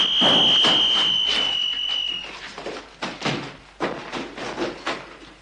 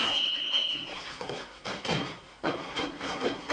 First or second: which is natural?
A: first